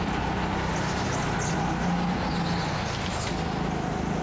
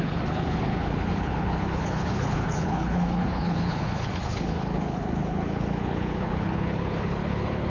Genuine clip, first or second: first